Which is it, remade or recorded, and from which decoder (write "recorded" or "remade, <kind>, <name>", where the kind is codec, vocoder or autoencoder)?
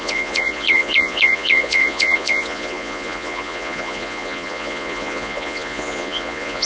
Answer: remade, vocoder, Vocos